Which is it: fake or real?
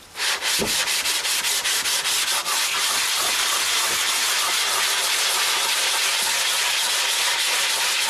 real